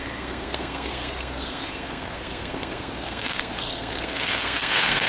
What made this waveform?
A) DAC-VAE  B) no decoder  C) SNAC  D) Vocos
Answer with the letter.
C